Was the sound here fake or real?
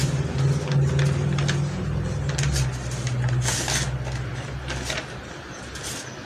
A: real